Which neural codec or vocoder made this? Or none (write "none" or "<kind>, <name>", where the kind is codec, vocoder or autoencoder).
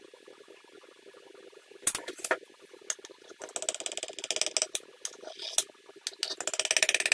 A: none